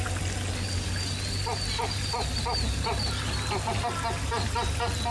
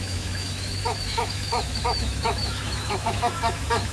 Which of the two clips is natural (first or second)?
first